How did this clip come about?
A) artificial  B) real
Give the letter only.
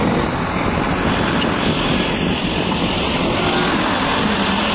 B